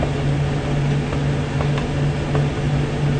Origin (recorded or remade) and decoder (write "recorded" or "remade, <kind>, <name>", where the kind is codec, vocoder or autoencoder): recorded